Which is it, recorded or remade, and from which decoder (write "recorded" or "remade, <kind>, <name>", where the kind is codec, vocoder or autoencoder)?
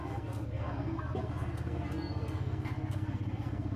remade, codec, SNAC